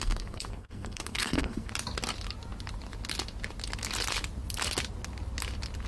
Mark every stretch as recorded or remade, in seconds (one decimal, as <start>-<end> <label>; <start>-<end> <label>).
0.0-1.7 remade; 1.7-5.9 recorded